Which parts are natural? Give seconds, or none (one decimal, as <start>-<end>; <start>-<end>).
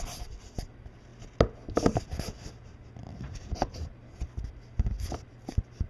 0.0-3.0; 4.0-5.9